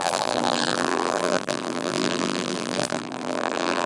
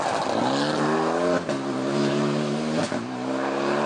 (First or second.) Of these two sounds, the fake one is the first